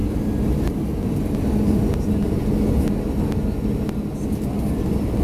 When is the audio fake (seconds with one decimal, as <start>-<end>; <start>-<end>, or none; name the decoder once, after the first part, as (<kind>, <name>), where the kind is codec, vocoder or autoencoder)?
none